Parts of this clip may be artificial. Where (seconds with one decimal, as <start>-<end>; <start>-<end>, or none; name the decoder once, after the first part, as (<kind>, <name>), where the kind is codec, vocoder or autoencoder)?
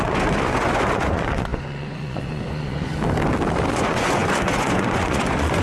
0.0-2.9 (vocoder, Vocos); 3.7-5.6